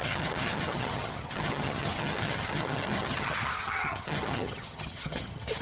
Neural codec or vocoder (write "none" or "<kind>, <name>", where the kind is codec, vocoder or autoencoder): vocoder, HiFi-GAN